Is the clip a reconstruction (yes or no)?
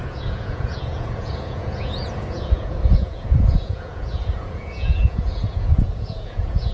yes